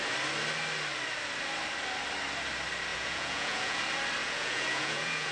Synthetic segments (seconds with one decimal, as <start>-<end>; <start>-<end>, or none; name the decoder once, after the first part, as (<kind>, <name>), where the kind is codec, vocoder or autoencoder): 2.9-3.8 (vocoder, Vocos); 4.2-5.3